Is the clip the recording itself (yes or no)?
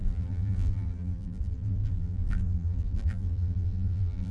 no